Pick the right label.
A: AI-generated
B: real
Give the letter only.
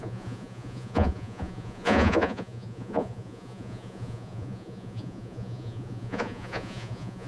A